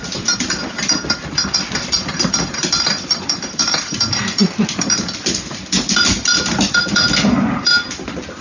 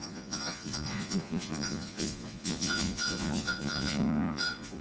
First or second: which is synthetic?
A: second